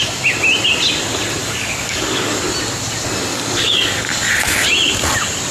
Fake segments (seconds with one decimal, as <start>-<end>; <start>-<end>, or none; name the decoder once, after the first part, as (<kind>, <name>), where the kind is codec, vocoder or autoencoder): 1.4-2.4 (codec, DAC); 3.3-4.3